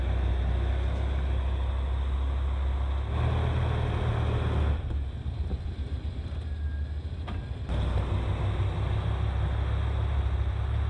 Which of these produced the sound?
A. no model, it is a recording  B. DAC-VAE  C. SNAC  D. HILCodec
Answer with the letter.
A